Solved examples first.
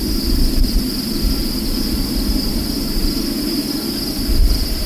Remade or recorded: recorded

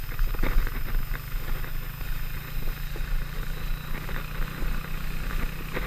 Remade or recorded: recorded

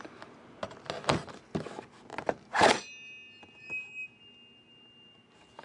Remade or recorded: recorded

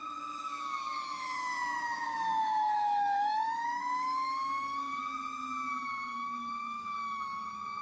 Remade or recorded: remade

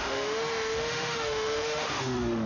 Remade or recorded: remade